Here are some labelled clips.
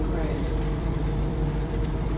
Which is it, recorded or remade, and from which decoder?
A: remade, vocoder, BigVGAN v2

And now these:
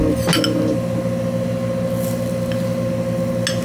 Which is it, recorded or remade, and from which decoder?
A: recorded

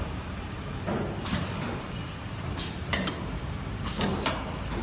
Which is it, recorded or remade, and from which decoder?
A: remade, vocoder, BigVGAN v2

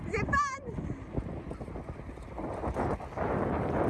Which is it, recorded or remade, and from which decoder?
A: recorded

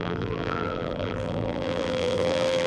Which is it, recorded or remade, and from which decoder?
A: remade, vocoder, BigVGAN v2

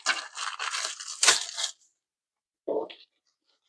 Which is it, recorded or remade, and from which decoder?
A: recorded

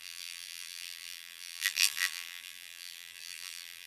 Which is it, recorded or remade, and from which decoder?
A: remade, vocoder, BigVGAN v2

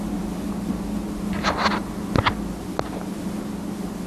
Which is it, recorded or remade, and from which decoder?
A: recorded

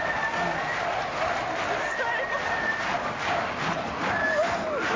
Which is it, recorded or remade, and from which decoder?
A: recorded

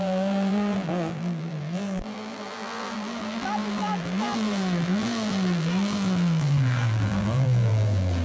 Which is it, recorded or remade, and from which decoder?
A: remade, vocoder, BigVGAN v2